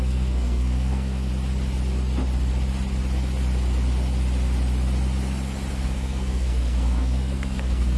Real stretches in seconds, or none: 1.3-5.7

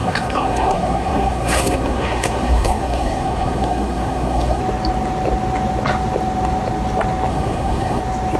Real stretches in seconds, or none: 4.6-7.3; 8.0-8.4

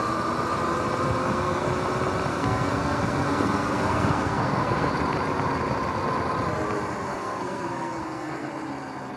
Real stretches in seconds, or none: 0.0-1.2; 1.7-2.3; 4.9-7.1; 8.5-9.2

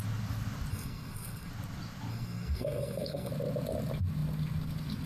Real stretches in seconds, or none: 0.0-0.7; 1.5-2.1; 3.3-5.1

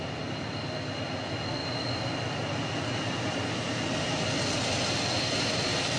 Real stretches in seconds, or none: 0.0-6.0

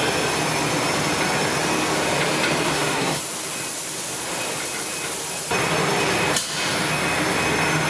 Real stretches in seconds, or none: 0.0-2.7; 3.2-7.9

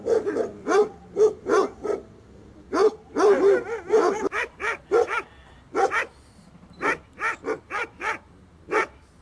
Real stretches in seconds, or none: 0.0-9.2

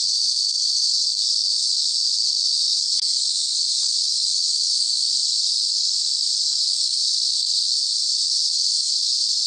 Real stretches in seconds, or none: none